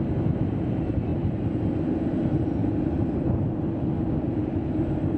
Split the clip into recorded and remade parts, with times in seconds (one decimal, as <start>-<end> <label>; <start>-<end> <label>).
0.0-1.1 recorded; 1.1-1.6 remade; 1.6-2.6 recorded; 2.6-3.3 remade; 3.3-5.2 recorded